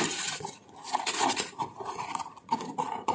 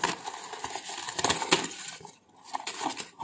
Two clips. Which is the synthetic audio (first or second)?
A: first